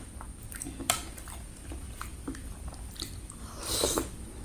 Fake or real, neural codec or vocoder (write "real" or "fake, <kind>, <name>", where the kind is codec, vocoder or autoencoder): fake, vocoder, BigVGAN v2